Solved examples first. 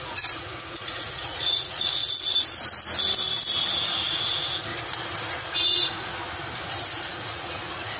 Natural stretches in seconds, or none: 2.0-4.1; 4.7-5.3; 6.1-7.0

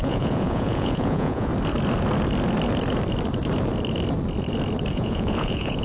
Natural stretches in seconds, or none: 1.5-4.9

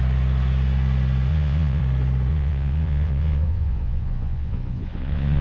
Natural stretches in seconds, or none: 0.0-1.3; 1.8-2.3

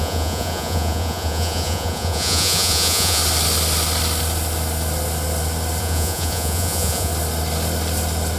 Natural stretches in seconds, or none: 3.2-5.8; 7.1-8.4

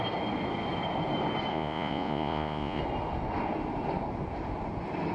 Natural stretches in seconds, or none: 0.0-1.5; 2.8-5.1

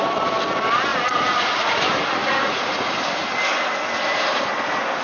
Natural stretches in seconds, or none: 0.0-0.9; 1.8-2.2; 2.9-5.0

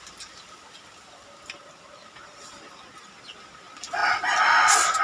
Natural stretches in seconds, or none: 0.0-5.0